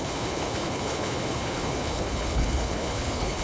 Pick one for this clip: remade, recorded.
remade